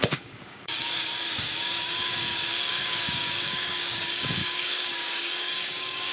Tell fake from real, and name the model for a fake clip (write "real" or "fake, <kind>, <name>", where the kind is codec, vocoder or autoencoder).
fake, codec, DAC